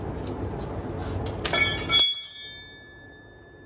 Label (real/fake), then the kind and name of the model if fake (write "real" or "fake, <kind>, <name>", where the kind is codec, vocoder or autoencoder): real